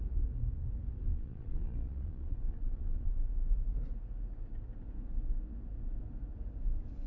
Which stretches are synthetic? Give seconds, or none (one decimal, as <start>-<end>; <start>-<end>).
1.1-3.1